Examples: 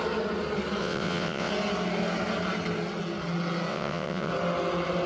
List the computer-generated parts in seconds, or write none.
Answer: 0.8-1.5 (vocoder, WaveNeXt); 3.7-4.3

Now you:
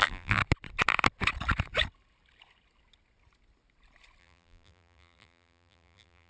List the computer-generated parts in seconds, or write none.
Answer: 0.0-0.4 (vocoder, BigVGAN v2); 4.2-6.3

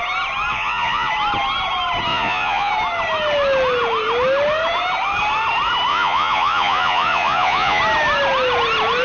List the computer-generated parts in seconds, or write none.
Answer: 0.5-1.1 (vocoder, Vocos); 2.1-2.7; 5.9-7.8

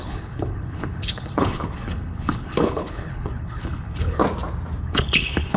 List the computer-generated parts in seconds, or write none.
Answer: 0.0-4.2 (codec, HILCodec); 4.8-5.6

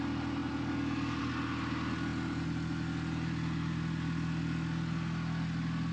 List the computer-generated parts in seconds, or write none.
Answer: none

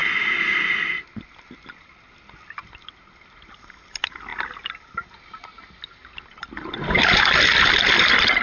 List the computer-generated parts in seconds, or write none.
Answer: none